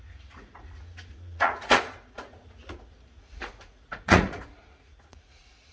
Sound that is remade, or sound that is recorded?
remade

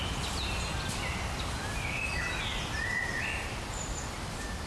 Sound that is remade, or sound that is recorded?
recorded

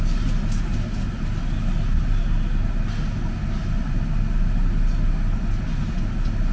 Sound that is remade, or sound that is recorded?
recorded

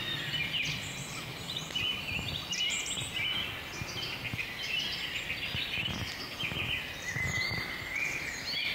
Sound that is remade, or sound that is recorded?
recorded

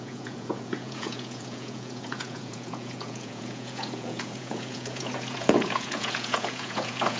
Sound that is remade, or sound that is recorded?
remade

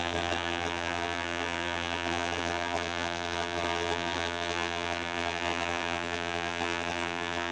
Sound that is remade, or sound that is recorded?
remade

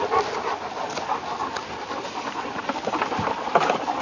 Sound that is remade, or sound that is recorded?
recorded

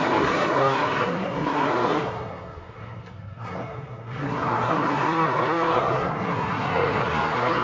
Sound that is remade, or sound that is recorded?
remade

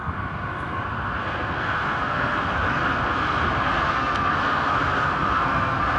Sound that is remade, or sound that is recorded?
remade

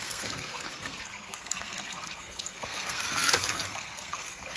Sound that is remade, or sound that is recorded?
remade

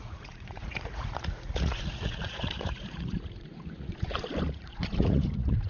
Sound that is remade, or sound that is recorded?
remade